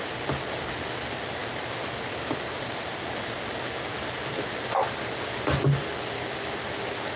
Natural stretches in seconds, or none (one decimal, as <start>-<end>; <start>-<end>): 0.0-7.2